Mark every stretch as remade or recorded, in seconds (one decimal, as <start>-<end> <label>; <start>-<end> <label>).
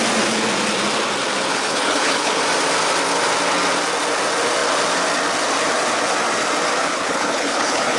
0.0-1.5 recorded; 1.5-2.4 remade; 2.4-6.8 recorded; 6.8-8.0 remade